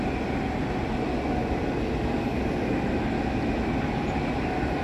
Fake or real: real